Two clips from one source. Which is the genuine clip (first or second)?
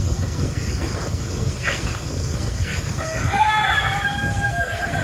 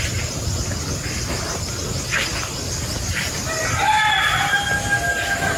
second